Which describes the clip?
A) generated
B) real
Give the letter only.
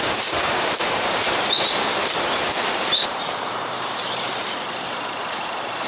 A